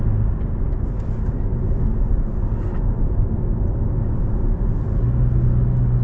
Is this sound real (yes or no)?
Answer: yes